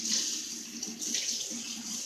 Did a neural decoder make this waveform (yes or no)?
no